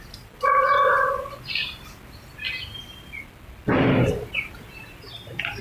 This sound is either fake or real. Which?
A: real